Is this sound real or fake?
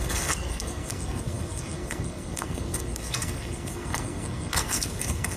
fake